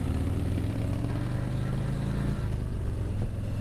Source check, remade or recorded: recorded